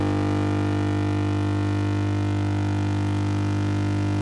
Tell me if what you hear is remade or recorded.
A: recorded